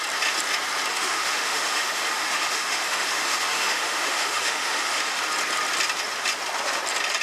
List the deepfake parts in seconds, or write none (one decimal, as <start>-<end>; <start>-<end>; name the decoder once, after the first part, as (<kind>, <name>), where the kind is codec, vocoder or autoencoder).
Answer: 0.9-5.2 (autoencoder, DAC-VAE)